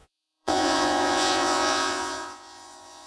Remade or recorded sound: remade